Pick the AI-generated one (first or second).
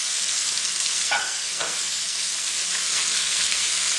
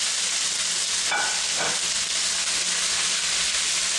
first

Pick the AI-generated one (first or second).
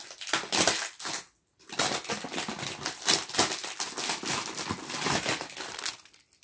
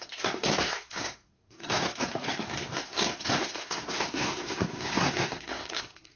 second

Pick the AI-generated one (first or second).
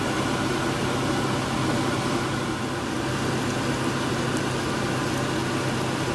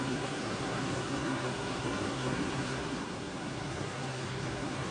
second